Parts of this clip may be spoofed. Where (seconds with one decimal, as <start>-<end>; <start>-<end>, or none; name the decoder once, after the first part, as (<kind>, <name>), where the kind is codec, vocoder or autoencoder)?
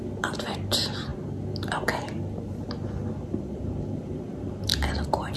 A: none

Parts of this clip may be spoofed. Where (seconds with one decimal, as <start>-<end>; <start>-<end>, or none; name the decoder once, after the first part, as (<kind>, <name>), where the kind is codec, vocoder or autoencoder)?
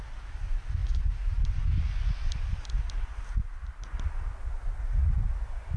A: none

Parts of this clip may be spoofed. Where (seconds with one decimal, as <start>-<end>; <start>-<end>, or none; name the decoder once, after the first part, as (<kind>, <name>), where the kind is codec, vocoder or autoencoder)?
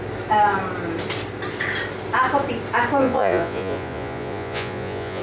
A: 3.0-5.2 (vocoder, Vocos)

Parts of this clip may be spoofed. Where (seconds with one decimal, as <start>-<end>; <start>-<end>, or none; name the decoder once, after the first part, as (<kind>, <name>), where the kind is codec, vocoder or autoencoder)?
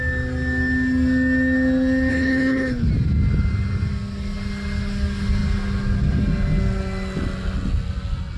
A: 2.1-2.9 (codec, HILCodec)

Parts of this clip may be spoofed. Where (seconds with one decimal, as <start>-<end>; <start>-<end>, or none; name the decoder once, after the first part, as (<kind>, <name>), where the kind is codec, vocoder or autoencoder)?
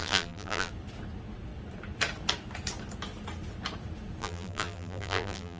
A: 0.0-0.7 (vocoder, BigVGAN v2); 4.2-5.6